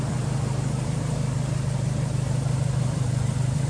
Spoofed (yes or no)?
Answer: yes